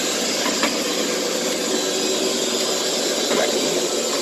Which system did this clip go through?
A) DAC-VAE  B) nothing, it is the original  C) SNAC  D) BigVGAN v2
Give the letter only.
B